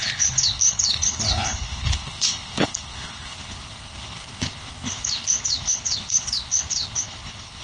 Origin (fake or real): fake